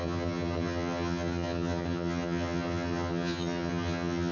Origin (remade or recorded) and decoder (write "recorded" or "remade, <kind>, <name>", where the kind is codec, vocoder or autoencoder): remade, vocoder, HiFi-GAN